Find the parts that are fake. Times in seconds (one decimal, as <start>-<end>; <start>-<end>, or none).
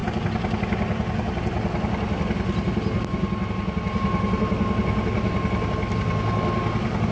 none